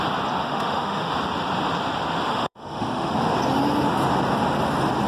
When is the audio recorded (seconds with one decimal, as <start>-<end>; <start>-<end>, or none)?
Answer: 0.0-0.4; 1.1-2.3; 3.1-5.1

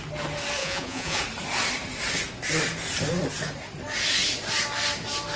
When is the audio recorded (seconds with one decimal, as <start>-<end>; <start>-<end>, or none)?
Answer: 0.0-0.6; 1.2-5.4

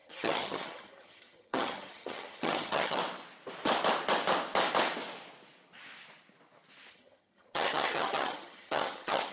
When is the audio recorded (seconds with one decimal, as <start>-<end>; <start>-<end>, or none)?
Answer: 3.0-6.9

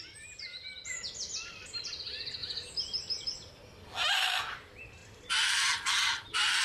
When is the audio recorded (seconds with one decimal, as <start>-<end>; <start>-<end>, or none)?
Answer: 0.0-6.6